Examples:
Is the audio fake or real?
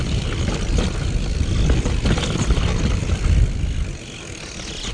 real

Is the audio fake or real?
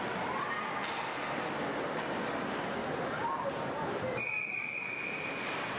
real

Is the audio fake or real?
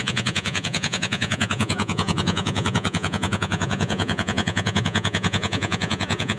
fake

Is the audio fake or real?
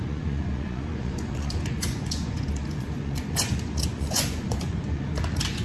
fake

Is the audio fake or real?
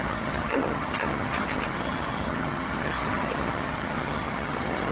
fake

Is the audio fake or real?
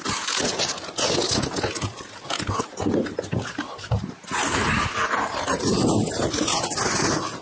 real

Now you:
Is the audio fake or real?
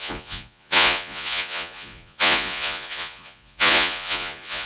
fake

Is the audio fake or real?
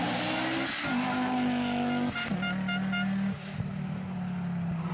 real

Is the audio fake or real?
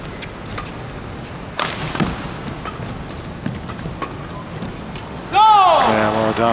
real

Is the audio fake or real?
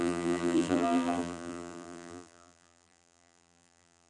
fake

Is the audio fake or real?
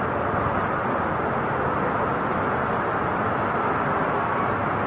real